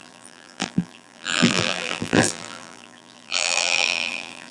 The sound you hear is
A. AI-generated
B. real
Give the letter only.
A